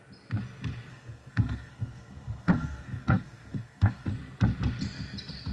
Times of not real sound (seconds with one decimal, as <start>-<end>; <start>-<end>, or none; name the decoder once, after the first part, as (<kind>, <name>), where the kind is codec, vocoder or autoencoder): 0.9-4.1 (codec, SNAC)